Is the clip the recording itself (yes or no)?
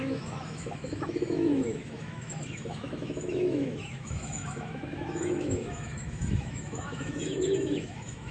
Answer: no